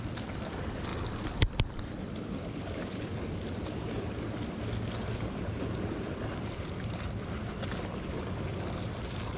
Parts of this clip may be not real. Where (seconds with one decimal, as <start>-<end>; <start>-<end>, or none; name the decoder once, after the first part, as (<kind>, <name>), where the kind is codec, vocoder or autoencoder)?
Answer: none